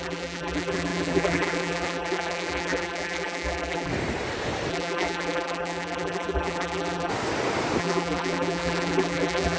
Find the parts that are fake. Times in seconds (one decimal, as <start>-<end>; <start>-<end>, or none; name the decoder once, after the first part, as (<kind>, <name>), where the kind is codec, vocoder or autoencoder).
0.0-3.9 (vocoder, BigVGAN v2); 4.7-7.1; 7.8-9.6